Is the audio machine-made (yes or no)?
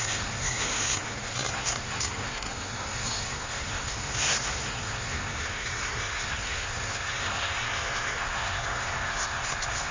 yes